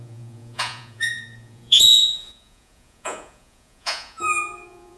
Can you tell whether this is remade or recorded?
remade